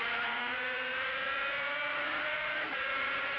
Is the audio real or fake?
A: fake